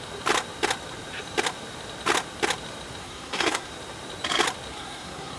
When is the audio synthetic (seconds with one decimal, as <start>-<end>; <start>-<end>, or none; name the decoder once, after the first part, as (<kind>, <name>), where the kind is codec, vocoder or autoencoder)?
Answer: 3.0-3.7 (codec, SNAC); 4.7-5.4